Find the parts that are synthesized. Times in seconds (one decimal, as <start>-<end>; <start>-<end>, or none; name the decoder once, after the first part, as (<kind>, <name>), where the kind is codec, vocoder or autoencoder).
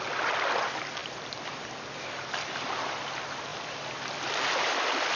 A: none